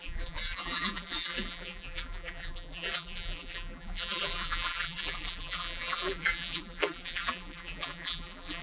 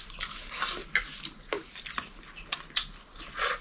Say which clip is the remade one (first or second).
first